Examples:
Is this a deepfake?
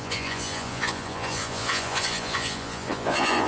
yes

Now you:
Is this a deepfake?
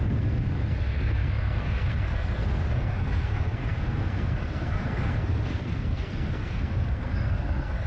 yes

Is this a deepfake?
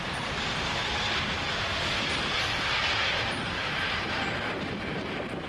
no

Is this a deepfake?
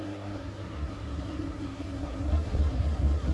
yes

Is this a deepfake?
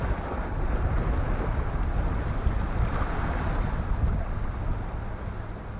no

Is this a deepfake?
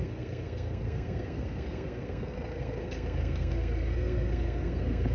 yes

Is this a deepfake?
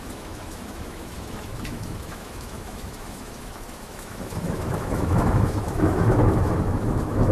yes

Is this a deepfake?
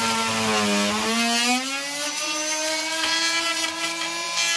no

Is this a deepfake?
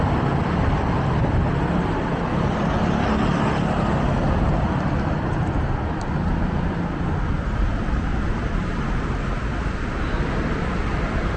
no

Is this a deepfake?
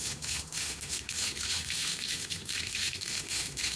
yes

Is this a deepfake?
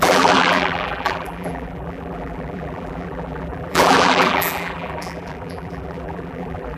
yes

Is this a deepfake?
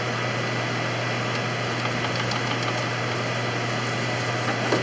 no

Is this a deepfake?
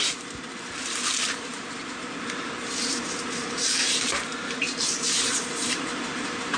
yes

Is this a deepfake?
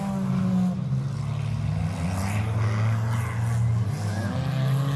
no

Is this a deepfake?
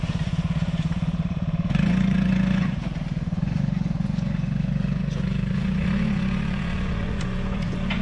yes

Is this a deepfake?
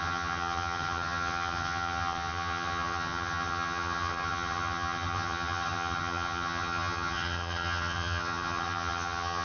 yes